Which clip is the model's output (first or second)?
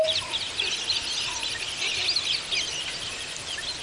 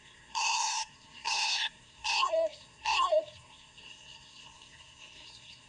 second